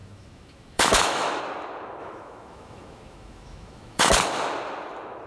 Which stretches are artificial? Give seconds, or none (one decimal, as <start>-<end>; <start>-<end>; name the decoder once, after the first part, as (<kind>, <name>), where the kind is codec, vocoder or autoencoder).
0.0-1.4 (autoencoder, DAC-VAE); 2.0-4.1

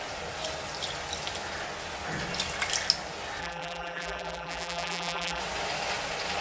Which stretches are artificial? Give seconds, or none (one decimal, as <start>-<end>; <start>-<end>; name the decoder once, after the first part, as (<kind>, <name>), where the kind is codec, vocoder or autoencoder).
3.4-5.4 (vocoder, BigVGAN v2)

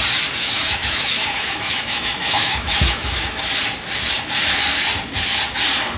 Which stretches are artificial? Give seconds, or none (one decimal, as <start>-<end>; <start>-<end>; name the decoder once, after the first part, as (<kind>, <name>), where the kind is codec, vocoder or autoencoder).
0.4-3.4 (autoencoder, DAC-VAE)

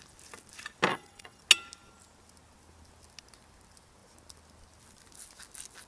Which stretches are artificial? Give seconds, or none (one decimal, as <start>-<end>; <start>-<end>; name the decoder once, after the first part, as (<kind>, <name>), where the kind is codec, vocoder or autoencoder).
0.9-1.4 (vocoder, WaveNeXt)

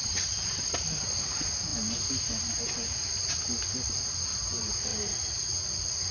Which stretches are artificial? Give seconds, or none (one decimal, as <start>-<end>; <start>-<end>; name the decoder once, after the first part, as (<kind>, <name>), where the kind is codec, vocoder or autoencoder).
0.0-0.8 (vocoder, BigVGAN v2)

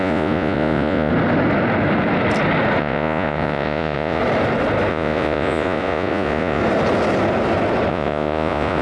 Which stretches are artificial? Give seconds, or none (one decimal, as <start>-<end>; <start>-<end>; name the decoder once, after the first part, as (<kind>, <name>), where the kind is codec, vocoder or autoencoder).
0.0-1.1 (vocoder, Vocos); 2.8-4.2; 4.9-6.6; 7.9-8.8